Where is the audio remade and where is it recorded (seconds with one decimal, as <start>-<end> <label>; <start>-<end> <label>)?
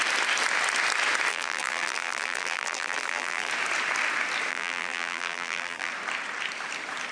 0.0-1.3 recorded; 1.3-3.5 remade; 3.5-4.5 recorded; 4.5-5.9 remade; 5.9-7.1 recorded